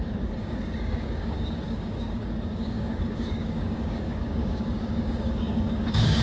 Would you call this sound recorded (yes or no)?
no